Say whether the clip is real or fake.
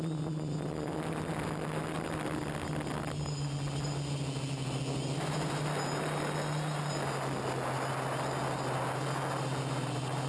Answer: real